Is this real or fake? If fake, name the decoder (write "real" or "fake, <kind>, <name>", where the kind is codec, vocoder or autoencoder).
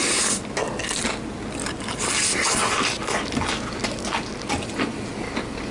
real